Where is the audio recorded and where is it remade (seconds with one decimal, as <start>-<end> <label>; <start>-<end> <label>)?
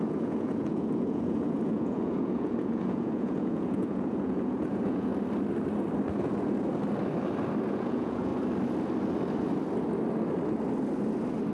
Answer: 0.0-5.1 remade; 5.1-7.7 recorded; 7.7-8.3 remade; 8.3-11.5 recorded